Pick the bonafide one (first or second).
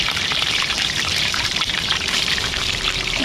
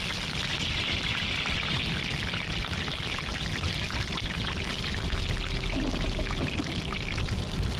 second